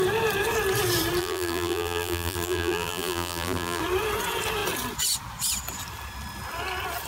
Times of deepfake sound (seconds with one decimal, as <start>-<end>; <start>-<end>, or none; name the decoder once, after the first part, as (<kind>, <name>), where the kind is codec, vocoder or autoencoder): 1.2-3.8 (vocoder, BigVGAN v2)